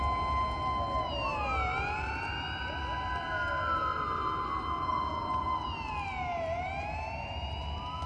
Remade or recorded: recorded